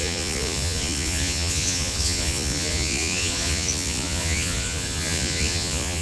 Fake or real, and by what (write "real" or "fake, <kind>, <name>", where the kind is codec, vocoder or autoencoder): fake, vocoder, Vocos